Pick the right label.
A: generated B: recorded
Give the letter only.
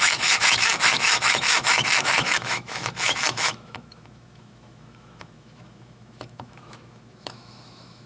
A